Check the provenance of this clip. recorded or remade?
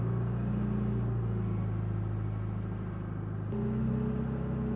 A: recorded